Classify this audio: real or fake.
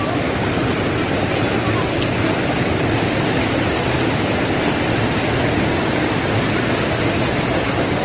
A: real